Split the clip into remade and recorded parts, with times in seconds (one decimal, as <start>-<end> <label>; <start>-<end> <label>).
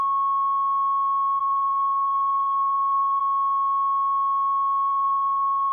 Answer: 0.0-1.4 recorded; 1.4-3.2 remade; 3.2-4.9 recorded; 4.9-5.7 remade